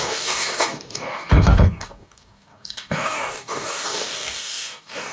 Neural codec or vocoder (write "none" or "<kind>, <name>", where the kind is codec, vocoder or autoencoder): codec, DAC